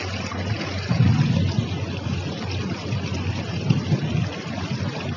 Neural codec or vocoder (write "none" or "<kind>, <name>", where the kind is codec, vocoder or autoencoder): none